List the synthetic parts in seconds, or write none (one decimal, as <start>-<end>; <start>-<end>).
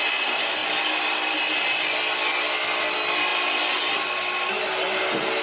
none